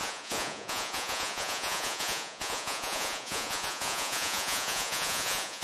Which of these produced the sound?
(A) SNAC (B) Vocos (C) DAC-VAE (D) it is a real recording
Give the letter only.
B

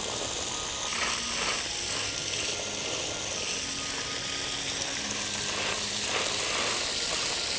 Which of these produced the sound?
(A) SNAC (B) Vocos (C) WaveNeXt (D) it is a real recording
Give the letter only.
D